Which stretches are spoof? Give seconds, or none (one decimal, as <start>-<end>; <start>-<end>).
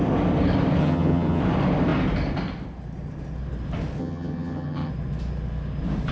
0.8-1.4; 4.0-4.9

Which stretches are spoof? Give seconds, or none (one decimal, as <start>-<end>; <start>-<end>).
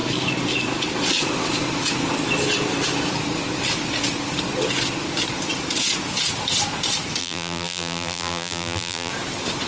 7.2-9.1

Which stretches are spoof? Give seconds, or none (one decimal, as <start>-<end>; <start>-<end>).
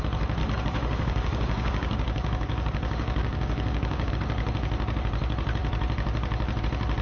0.4-4.1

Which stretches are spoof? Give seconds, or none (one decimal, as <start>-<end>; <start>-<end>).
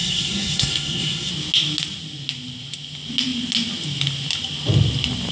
0.0-1.3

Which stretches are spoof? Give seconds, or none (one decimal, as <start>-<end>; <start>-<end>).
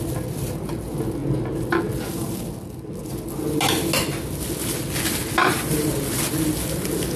5.4-5.9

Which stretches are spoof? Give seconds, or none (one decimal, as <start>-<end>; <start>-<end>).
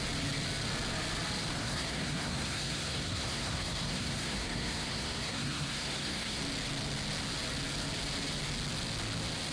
1.5-6.4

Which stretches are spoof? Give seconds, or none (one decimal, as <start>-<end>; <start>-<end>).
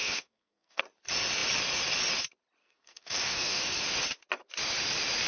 0.0-0.8; 2.6-3.6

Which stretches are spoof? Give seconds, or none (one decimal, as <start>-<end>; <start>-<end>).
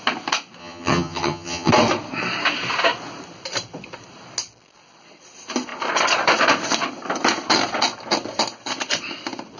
0.6-1.7